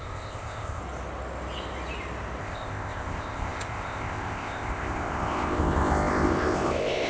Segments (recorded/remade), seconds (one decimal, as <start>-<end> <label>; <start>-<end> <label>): 0.0-0.8 remade; 0.8-2.4 recorded; 2.4-7.1 remade